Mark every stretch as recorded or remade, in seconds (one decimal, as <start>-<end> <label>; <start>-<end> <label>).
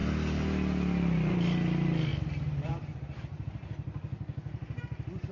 0.0-5.3 recorded